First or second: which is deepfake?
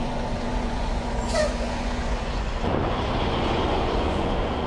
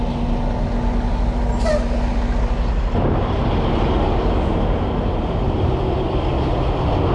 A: first